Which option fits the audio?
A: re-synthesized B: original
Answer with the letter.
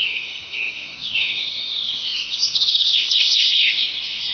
A